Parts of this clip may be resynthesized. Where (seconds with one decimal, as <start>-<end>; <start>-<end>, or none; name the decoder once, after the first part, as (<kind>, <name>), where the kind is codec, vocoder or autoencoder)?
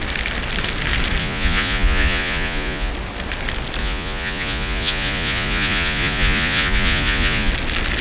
1.2-2.9 (vocoder, Vocos); 3.8-7.5